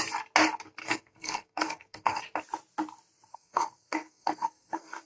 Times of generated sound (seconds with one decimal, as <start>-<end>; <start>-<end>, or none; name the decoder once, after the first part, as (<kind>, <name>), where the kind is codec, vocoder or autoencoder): 0.8-2.2 (codec, SNAC); 3.3-5.1

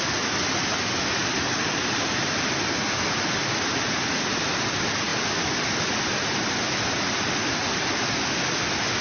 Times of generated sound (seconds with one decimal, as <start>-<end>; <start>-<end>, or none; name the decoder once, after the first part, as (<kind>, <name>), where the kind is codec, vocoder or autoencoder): none